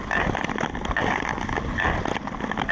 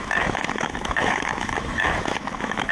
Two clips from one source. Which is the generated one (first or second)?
second